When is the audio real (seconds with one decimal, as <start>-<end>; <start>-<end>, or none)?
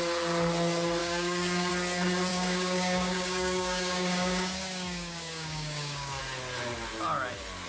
0.0-1.0; 1.7-2.3; 6.2-7.7